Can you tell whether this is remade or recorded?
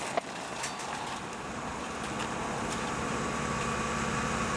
recorded